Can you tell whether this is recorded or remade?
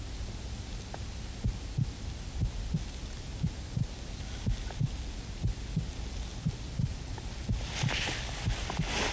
recorded